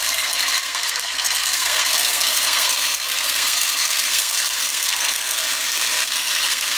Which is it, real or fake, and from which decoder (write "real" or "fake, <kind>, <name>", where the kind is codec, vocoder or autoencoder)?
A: fake, codec, SNAC